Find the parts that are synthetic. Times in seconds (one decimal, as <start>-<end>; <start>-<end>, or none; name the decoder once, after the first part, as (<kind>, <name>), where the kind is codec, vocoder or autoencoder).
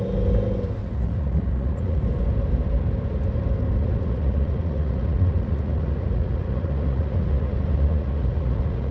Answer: 0.8-2.0 (vocoder, Vocos); 3.8-8.9